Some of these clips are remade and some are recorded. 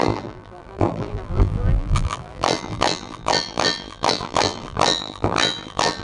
remade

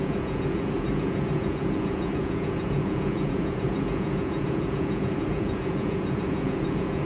remade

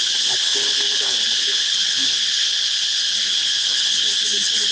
remade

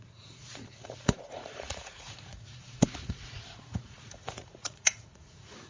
remade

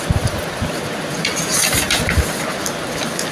recorded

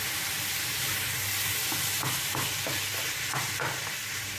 recorded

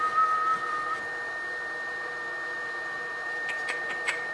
recorded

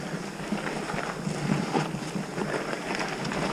recorded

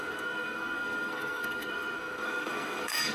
remade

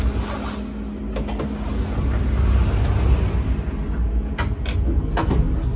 recorded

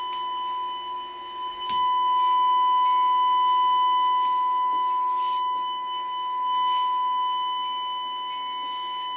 recorded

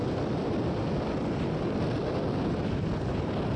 recorded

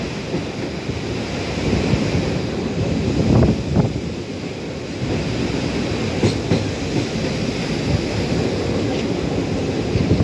recorded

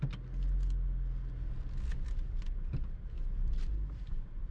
recorded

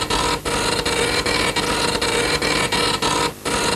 recorded